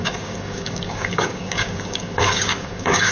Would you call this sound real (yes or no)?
no